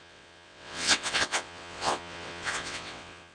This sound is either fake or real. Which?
fake